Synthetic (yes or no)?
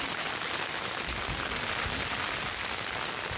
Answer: no